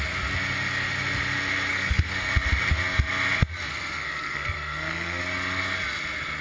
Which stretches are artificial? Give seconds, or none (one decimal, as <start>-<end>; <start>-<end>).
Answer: 1.7-2.3; 3.7-5.2

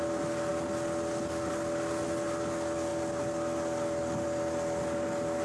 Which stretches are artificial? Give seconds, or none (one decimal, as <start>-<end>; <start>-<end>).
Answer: none

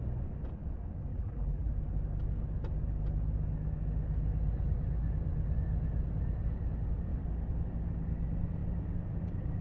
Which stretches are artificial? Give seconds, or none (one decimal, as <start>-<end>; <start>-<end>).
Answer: 1.1-1.7

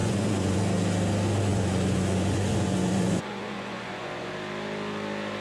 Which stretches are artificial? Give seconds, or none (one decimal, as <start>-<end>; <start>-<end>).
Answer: 0.0-0.6; 1.5-4.3

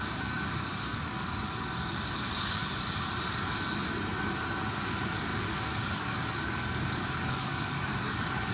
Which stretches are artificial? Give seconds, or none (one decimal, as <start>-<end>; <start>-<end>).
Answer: 0.0-2.6; 4.7-8.5

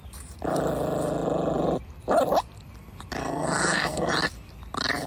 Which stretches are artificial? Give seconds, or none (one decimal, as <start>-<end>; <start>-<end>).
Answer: 3.2-4.1

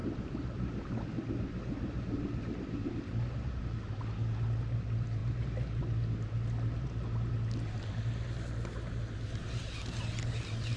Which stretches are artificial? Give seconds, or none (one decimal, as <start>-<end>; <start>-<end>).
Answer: none